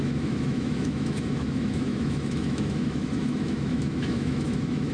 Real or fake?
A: fake